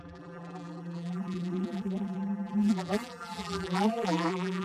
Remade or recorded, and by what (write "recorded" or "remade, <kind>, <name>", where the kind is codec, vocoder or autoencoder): remade, vocoder, BigVGAN v2